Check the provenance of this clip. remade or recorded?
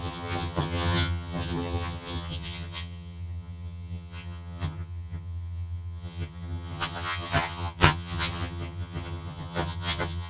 remade